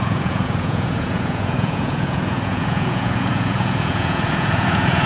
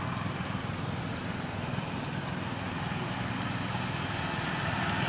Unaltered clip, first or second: second